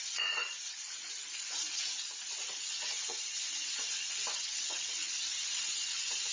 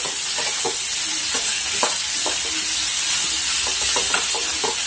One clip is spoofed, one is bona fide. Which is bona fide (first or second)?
second